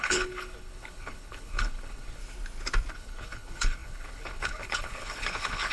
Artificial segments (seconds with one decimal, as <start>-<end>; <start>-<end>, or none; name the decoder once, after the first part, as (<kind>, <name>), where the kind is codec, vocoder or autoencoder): 0.0-2.2 (codec, HILCodec); 2.9-5.7